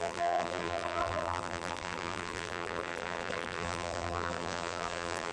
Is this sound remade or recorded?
remade